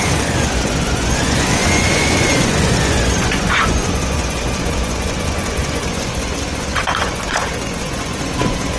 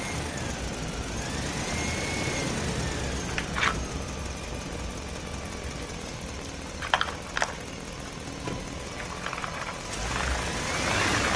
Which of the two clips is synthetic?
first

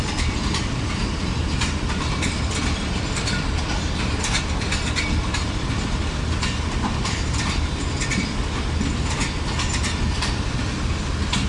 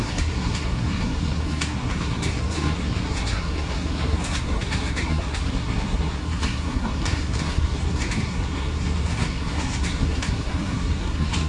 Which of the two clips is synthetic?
second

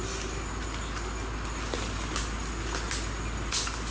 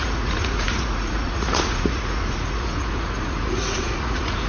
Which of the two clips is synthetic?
second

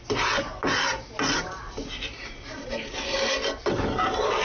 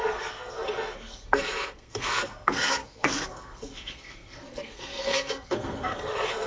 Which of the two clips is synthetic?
second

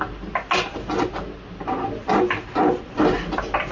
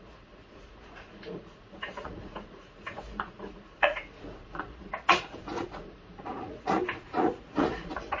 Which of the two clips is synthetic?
second